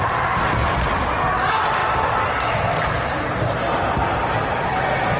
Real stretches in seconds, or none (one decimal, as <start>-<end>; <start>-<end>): 0.0-5.2